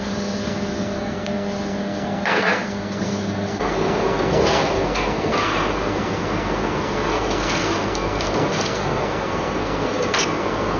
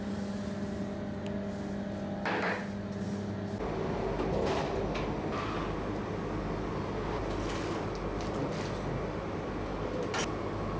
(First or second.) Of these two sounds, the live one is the second